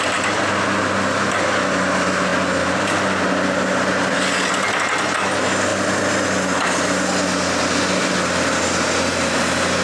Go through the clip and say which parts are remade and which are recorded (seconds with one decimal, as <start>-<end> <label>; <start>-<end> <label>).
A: 0.0-9.8 recorded